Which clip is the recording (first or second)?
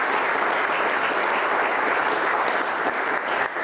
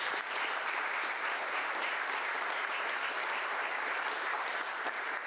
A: first